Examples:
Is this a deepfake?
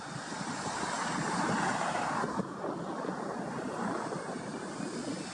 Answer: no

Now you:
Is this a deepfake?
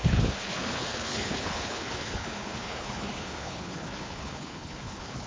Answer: yes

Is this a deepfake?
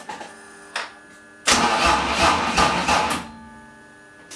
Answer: no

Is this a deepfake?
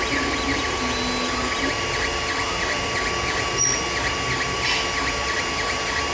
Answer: no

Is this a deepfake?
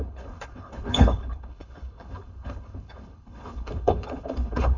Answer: yes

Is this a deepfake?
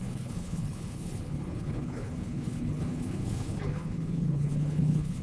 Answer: yes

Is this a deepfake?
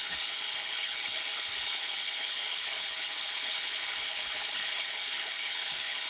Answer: yes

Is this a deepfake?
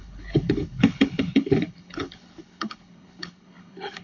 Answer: yes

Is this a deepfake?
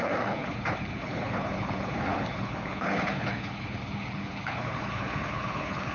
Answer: yes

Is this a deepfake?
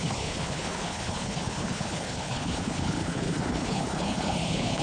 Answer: yes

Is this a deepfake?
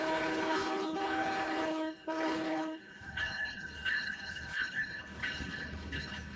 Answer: yes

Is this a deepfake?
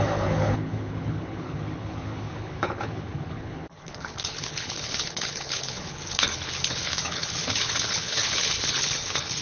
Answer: yes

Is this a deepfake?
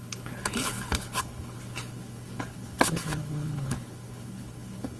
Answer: yes